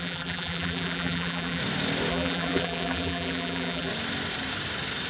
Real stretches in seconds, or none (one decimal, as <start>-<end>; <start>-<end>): 1.6-2.1; 3.9-5.1